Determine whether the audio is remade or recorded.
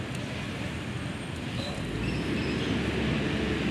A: recorded